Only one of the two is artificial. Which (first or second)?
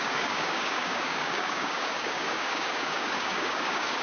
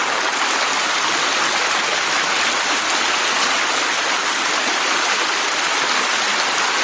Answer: first